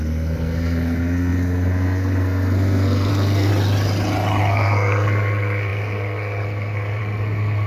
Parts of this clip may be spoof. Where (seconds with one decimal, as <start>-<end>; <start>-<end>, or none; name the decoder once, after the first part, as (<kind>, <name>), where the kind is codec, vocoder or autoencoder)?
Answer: 0.0-3.5 (codec, SNAC); 4.4-7.7